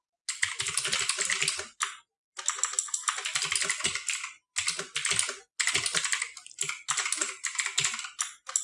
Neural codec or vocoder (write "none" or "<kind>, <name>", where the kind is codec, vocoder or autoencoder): none